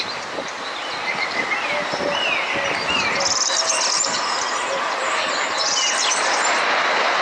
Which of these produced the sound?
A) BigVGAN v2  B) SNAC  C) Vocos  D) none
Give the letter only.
D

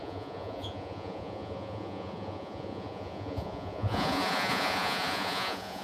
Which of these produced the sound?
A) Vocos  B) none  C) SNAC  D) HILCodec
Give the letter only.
A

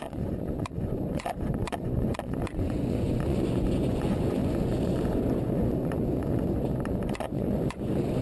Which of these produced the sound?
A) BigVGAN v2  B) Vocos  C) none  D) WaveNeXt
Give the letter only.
B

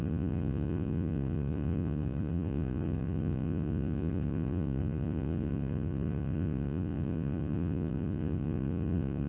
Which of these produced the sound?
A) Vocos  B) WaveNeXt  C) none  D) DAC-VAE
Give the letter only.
A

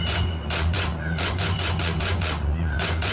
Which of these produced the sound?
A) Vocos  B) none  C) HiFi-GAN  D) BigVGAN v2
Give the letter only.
A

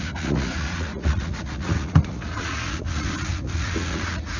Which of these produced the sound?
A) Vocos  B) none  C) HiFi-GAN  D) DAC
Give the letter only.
A